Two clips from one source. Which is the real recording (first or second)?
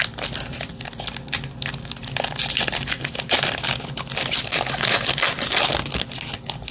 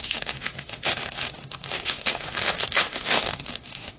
first